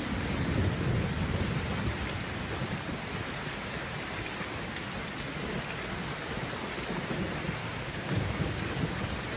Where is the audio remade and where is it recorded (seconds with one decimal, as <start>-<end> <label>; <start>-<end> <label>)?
0.0-7.6 recorded; 7.6-8.6 remade; 8.6-9.4 recorded